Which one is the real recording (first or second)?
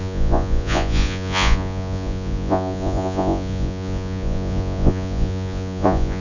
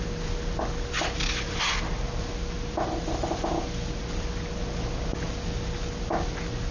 second